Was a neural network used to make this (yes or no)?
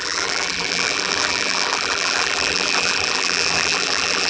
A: yes